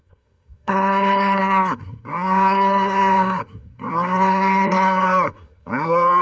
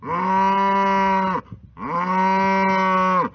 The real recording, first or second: second